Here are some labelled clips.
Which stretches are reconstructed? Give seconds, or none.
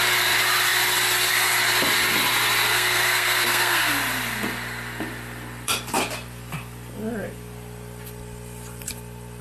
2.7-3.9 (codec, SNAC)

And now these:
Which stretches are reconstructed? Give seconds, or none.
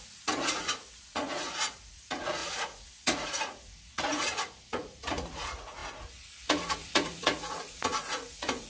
0.0-8.7 (vocoder, Vocos)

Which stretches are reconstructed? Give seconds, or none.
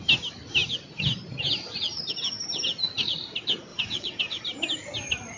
3.7-4.4 (vocoder, WaveNeXt)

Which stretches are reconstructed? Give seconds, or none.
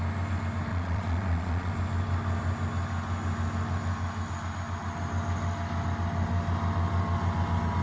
0.7-1.7 (vocoder, Vocos)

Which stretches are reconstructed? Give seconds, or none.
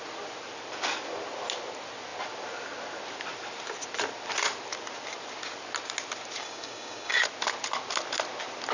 6.4-7.2 (codec, DAC)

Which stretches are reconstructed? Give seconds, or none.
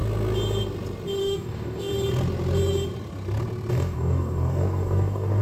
1.2-1.9 (codec, DAC); 3.7-5.4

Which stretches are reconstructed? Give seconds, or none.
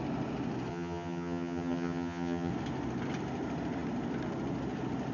0.7-2.5 (vocoder, HiFi-GAN)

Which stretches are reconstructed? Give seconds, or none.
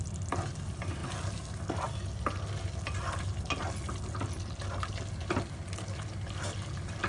none